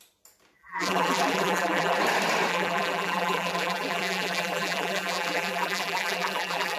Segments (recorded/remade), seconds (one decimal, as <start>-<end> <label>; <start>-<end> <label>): 0.0-0.6 recorded; 0.6-2.0 remade; 2.0-2.5 recorded; 2.5-6.8 remade